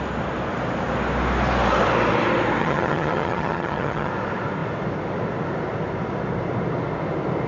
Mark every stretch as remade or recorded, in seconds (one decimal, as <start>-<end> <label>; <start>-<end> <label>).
0.0-2.6 recorded; 2.6-4.1 remade; 4.1-7.5 recorded

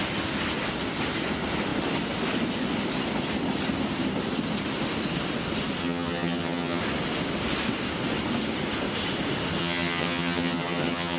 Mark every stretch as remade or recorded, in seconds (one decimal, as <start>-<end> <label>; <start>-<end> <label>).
0.0-5.8 recorded; 5.8-6.8 remade; 6.8-9.6 recorded; 9.6-11.2 remade

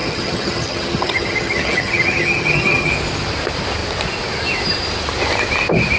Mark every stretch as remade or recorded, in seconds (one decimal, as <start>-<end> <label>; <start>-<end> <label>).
0.0-2.9 remade; 2.9-6.0 recorded

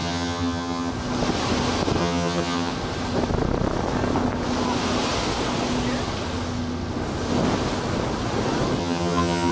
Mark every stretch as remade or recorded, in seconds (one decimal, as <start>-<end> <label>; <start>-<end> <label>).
0.0-0.9 remade; 0.9-2.0 recorded; 2.0-2.7 remade; 2.7-8.8 recorded; 8.8-9.5 remade

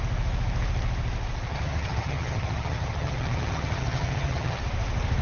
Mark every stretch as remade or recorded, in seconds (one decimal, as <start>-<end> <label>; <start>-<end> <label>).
0.0-1.5 recorded; 1.5-4.6 remade; 4.6-5.2 recorded

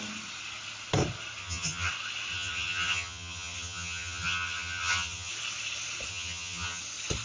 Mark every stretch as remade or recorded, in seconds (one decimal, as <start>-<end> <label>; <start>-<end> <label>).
0.0-1.4 recorded; 1.4-1.9 remade; 1.9-2.3 recorded; 2.3-5.3 remade; 5.3-6.1 recorded; 6.1-6.8 remade; 6.8-7.2 recorded

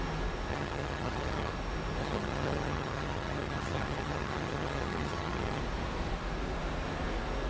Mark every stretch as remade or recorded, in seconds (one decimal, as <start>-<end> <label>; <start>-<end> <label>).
0.0-0.5 recorded; 0.5-1.5 remade; 1.5-2.0 recorded; 2.0-5.6 remade; 5.6-7.5 recorded